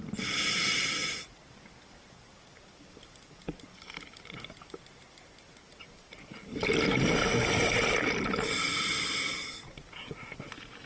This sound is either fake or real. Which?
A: real